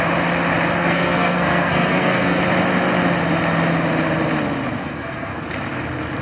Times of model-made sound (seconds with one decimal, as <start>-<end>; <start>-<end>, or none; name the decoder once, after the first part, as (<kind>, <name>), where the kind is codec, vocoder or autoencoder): 0.8-2.4 (codec, SNAC); 4.8-5.4